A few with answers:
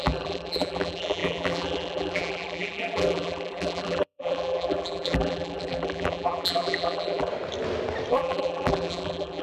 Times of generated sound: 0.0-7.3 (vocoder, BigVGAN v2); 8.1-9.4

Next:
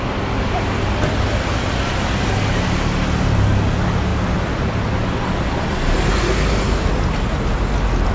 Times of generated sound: none

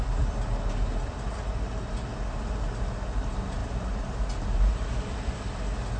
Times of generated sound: none

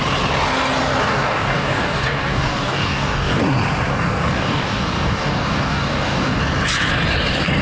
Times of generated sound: 1.0-3.4 (codec, DAC); 3.9-6.4

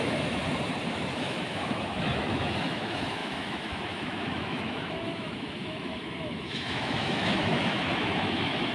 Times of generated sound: 0.0-0.4 (autoencoder, DAC-VAE); 0.9-8.7